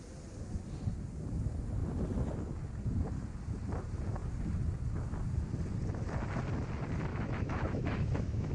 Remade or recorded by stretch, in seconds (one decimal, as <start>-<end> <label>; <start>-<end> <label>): 0.0-7.1 recorded; 7.1-8.5 remade